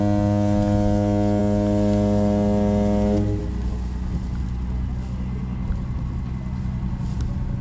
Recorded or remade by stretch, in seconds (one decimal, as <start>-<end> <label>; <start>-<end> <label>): 0.0-7.6 recorded